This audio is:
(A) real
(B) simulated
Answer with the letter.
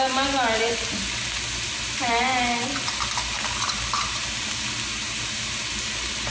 A